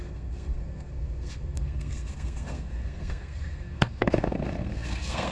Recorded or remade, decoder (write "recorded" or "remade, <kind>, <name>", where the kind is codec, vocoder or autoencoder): remade, codec, SNAC